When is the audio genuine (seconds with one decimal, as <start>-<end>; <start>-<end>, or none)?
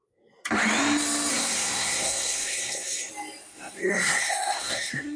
0.0-1.3; 3.1-3.5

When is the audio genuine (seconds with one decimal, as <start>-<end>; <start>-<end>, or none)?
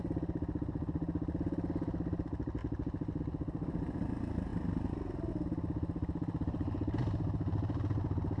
0.0-8.4